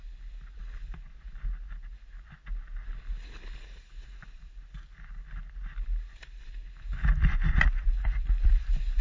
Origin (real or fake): real